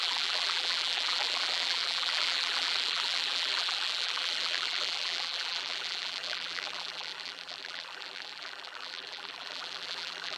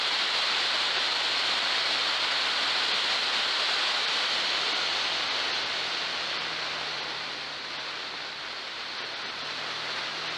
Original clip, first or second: second